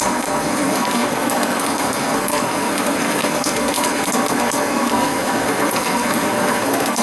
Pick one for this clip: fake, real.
fake